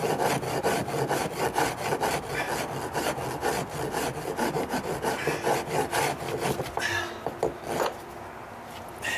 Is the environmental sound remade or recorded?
recorded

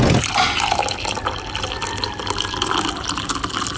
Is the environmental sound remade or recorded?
recorded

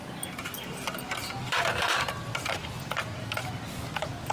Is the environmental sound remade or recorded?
recorded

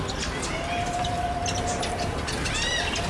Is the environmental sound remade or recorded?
recorded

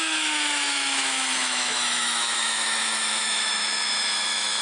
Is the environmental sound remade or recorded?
remade